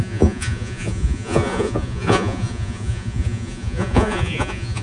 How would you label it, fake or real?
fake